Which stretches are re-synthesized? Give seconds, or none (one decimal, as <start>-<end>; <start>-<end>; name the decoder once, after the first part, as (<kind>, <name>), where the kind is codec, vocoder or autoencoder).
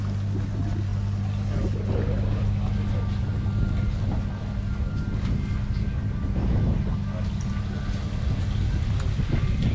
none